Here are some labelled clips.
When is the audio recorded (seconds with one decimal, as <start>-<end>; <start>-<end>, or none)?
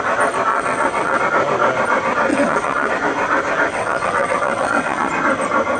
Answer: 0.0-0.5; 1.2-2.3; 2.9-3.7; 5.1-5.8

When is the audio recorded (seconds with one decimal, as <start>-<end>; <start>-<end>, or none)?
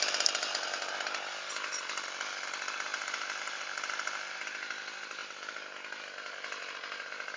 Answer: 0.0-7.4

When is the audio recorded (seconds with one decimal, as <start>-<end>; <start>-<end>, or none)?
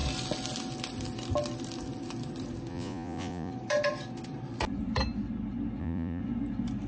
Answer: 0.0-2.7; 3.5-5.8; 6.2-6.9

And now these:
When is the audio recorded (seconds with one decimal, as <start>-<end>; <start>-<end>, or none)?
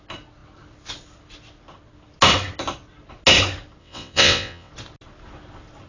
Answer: 0.0-3.8; 4.7-5.9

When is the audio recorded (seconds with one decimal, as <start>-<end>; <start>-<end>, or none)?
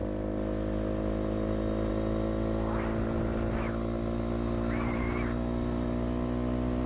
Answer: 0.0-6.9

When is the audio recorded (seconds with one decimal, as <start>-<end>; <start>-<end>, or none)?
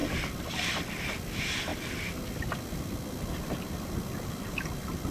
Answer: none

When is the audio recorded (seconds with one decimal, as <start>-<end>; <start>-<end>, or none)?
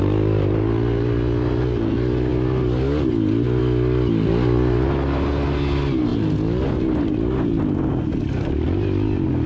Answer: 0.0-9.5